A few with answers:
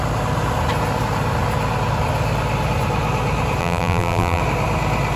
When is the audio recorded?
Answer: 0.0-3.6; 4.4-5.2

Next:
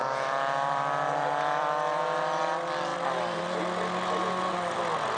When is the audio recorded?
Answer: 2.0-2.9; 3.6-5.2

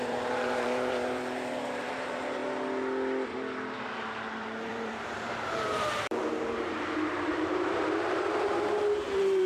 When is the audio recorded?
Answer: 2.4-4.0

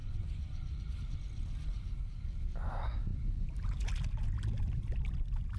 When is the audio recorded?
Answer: 1.0-5.6

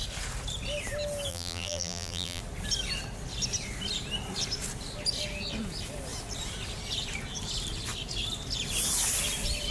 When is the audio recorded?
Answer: 0.0-1.3; 2.4-9.7